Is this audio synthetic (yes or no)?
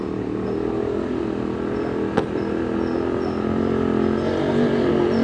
no